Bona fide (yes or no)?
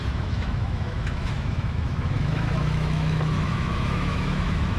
no